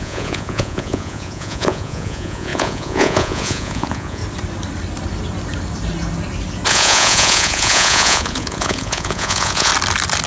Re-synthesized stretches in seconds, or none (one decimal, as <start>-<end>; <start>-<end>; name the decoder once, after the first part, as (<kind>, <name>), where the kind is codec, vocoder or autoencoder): 0.0-4.2 (vocoder, Vocos); 6.7-9.7